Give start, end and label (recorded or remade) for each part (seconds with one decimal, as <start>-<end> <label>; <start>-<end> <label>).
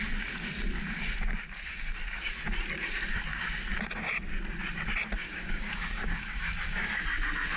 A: 0.0-5.2 recorded; 5.2-7.0 remade; 7.0-7.6 recorded